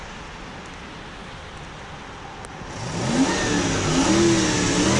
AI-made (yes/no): no